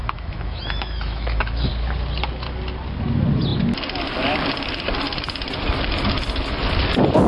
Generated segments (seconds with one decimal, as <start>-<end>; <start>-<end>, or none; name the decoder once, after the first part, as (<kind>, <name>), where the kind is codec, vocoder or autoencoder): 0.0-1.7 (autoencoder, DAC-VAE)